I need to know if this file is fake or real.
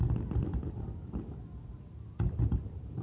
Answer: real